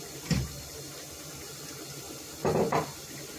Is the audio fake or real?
real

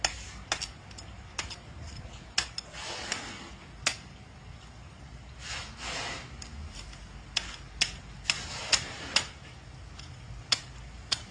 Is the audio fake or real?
real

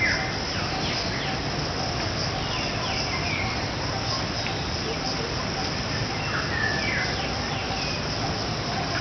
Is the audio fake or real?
real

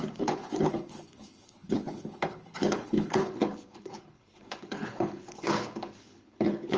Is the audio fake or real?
fake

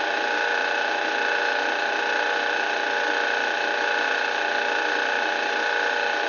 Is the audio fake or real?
real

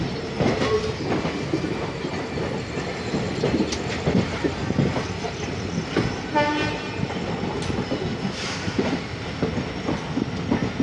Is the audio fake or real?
real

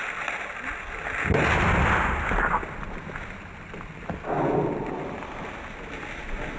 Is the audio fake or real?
real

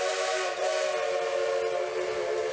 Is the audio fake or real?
real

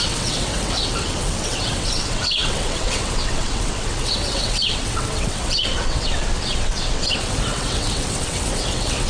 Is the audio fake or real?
fake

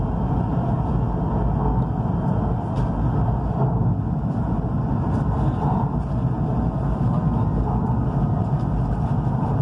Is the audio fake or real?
real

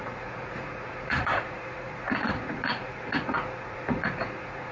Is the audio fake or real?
fake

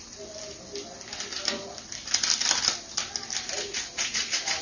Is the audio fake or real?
real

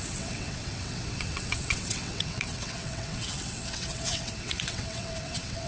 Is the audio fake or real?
fake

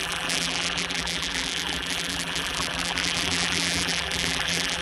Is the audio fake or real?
fake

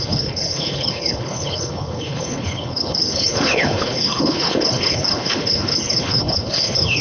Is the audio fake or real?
fake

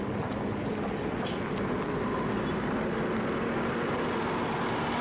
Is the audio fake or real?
real